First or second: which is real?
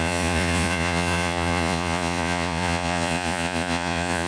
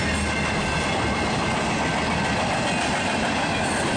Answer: second